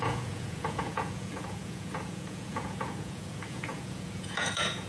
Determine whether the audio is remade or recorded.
remade